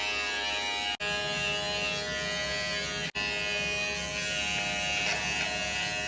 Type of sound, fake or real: real